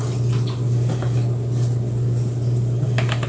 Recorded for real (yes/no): yes